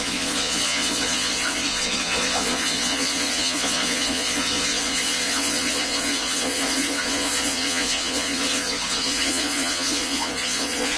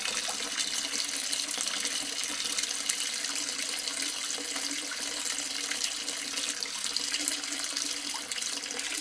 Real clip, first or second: second